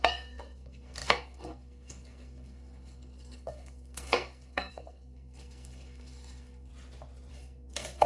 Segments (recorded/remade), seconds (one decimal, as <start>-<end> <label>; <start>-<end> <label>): 0.0-6.7 remade; 6.7-7.3 recorded; 7.3-8.1 remade